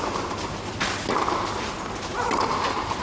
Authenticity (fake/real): real